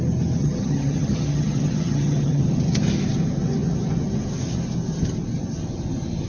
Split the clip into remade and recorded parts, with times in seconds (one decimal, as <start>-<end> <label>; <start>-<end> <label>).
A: 0.0-0.4 recorded; 0.4-2.4 remade; 2.4-6.3 recorded